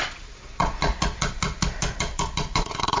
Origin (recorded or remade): remade